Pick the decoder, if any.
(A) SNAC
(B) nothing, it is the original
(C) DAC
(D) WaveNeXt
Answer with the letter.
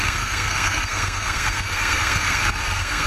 A